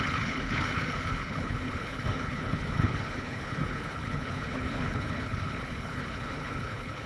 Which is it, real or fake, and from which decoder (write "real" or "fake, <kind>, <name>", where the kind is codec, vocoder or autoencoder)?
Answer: fake, codec, HILCodec